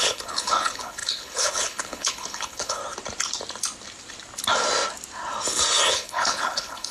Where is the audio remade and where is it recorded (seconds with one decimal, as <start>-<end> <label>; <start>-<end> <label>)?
0.0-2.8 remade; 2.8-5.9 recorded; 5.9-6.9 remade